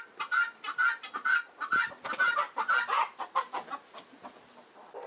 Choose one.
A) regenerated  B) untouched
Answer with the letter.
B